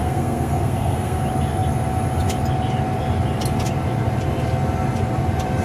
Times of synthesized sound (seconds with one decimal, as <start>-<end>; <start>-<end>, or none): 0.0-1.2